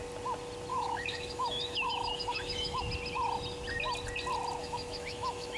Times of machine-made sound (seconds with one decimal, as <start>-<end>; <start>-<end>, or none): 0.7-2.8; 4.6-5.6

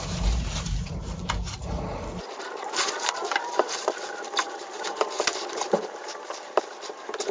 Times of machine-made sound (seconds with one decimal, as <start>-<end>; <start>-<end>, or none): 0.0-1.2; 2.4-7.3

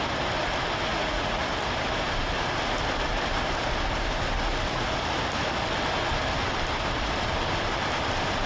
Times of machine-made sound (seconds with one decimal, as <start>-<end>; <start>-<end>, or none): 0.9-1.4

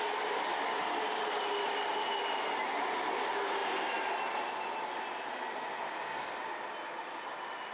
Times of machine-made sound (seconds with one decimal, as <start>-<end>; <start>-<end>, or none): none

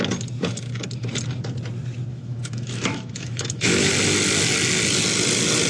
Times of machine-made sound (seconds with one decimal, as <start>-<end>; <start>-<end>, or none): 2.1-3.9

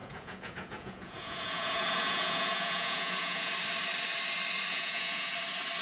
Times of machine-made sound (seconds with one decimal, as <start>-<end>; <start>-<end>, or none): 0.0-3.5; 4.7-5.3